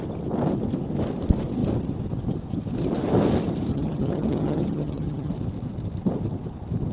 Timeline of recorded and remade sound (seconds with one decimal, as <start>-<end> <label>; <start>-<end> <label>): 0.0-3.7 recorded; 3.7-5.3 remade; 5.3-6.9 recorded